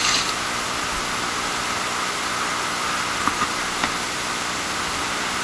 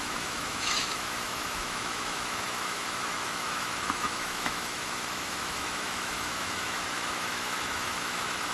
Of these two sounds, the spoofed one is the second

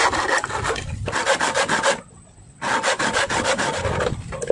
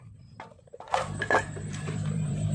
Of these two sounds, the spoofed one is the second